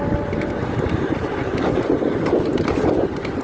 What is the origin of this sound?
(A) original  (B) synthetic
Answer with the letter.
A